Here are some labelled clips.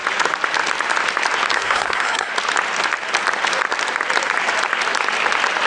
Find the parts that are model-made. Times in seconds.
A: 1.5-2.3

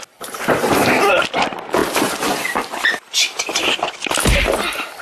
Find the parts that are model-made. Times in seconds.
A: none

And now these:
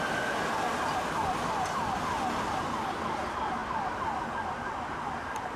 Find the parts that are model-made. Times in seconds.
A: none

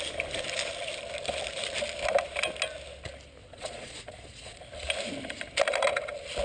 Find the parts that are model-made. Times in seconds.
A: 3.4-4.6